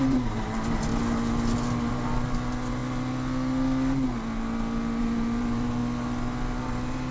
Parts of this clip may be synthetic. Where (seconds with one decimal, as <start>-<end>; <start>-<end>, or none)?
0.0-0.9; 1.9-2.8; 5.0-5.8; 6.6-7.1